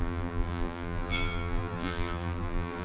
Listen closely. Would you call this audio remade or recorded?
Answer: remade